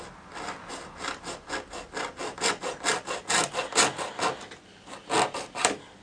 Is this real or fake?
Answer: real